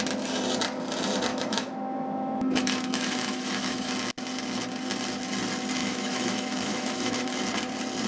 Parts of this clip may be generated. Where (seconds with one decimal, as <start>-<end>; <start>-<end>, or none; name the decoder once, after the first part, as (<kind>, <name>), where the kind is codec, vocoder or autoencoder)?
1.3-3.9 (autoencoder, DAC-VAE); 5.8-7.3